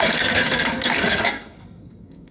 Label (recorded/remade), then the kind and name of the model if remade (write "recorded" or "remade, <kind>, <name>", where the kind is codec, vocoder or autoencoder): remade, codec, SNAC